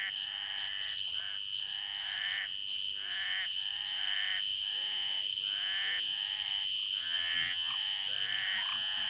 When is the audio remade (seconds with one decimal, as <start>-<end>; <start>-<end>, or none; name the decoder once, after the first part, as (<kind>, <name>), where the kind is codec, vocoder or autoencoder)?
7.0-7.7 (vocoder, HiFi-GAN)